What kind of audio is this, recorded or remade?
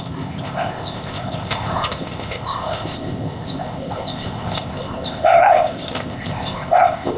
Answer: remade